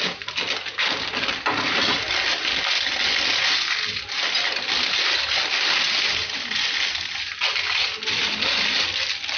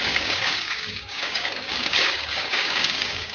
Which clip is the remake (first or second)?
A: second